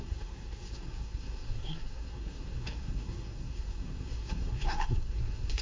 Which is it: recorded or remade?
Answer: remade